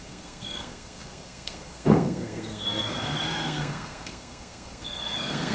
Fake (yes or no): yes